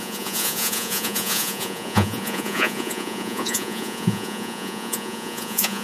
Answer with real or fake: fake